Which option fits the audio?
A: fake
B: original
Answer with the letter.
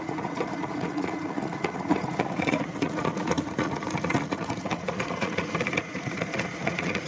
A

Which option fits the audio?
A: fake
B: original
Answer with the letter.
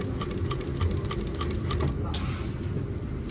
B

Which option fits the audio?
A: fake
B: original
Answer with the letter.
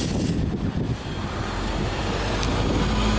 B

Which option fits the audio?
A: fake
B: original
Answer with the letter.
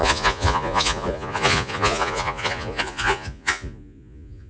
A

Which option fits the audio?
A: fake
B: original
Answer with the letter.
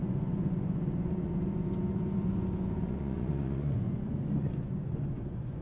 A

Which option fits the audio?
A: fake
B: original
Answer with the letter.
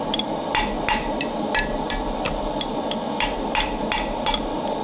B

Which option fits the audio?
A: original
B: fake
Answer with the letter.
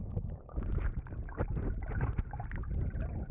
A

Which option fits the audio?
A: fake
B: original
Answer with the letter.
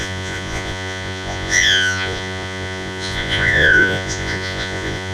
A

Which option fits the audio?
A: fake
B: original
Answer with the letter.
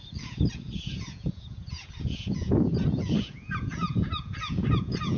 A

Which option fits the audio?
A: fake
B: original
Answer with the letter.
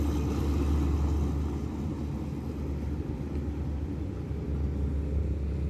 B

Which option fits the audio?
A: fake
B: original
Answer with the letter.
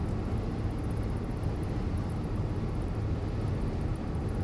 B